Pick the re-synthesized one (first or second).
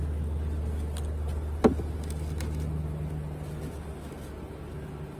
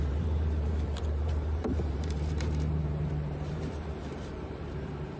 second